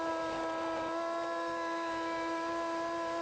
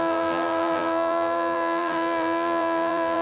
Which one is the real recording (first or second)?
first